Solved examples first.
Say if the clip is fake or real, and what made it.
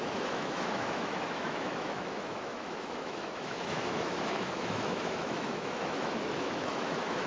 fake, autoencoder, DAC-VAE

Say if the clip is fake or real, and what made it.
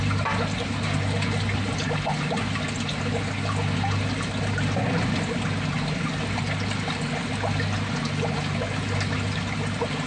real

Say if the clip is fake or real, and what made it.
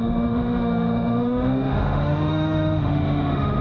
fake, autoencoder, DAC-VAE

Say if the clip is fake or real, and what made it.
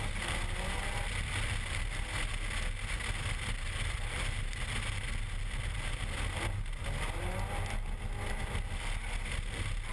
real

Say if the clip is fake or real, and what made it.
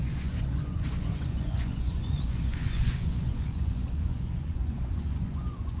fake, vocoder, Vocos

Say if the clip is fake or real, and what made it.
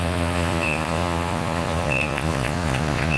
fake, vocoder, Vocos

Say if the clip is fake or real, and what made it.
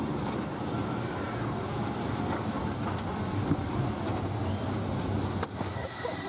real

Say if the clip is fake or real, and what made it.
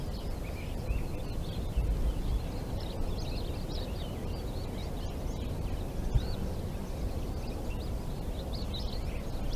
real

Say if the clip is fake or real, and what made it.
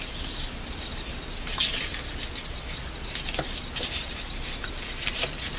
real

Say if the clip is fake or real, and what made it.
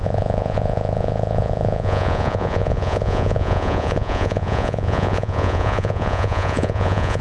fake, vocoder, Vocos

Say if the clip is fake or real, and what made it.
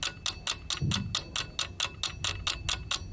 real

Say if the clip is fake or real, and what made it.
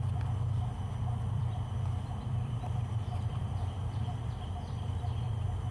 fake, vocoder, BigVGAN v2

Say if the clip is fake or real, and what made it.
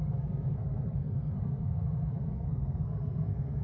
fake, codec, SNAC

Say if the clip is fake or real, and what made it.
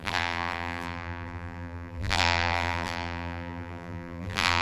fake, vocoder, BigVGAN v2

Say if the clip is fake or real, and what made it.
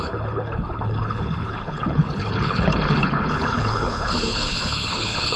fake, codec, HILCodec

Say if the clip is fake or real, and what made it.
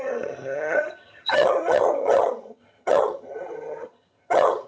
fake, vocoder, HiFi-GAN